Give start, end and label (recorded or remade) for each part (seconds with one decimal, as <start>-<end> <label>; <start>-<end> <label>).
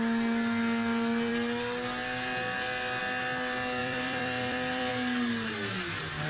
0.0-3.8 recorded; 3.8-4.9 remade; 4.9-6.3 recorded